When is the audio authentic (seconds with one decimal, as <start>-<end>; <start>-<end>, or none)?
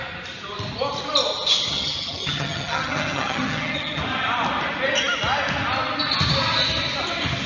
0.0-1.7; 4.0-7.5